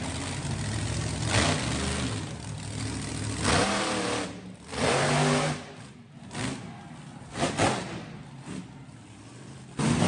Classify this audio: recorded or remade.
recorded